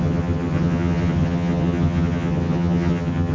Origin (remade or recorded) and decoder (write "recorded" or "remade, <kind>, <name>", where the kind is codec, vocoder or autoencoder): remade, vocoder, HiFi-GAN